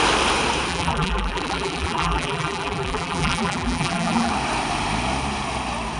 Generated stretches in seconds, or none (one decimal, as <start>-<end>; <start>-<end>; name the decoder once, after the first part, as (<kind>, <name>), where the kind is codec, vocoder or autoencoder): 0.7-4.3 (vocoder, BigVGAN v2)